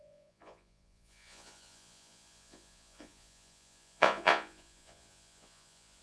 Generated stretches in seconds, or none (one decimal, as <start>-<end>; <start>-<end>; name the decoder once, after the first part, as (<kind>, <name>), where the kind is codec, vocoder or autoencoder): 0.0-6.0 (vocoder, Vocos)